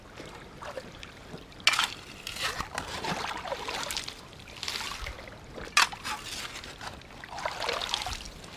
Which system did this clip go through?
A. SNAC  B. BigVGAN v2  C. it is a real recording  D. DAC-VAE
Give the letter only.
C